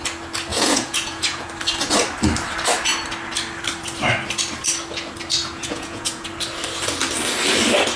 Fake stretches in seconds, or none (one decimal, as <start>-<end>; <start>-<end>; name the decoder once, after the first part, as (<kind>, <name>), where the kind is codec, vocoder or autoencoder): 0.5-1.5 (vocoder, Vocos); 5.4-6.3